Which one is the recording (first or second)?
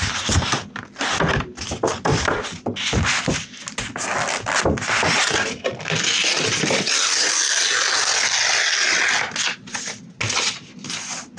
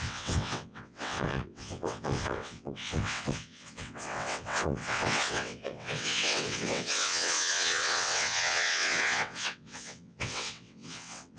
first